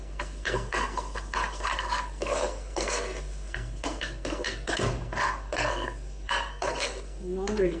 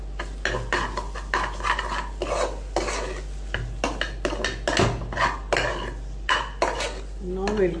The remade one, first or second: first